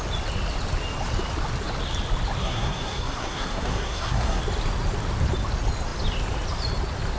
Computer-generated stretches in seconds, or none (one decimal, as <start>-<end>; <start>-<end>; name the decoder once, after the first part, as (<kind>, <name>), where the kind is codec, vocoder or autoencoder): 2.4-4.4 (codec, SNAC)